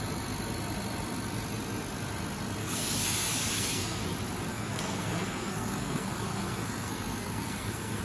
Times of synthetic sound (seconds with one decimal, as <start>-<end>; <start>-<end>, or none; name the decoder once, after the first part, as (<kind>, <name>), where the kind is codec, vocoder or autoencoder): 2.6-4.0 (codec, SNAC); 4.5-8.0